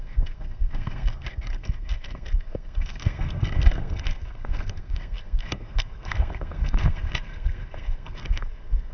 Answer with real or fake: fake